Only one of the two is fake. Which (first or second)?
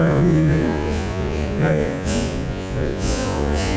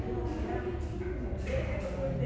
first